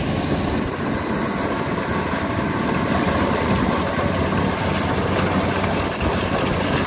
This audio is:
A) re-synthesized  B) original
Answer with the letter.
B